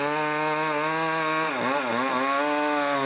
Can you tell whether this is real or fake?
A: real